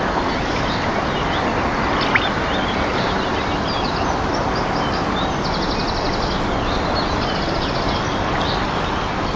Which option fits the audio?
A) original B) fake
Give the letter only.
A